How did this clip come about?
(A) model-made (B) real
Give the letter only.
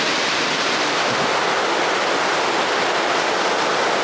B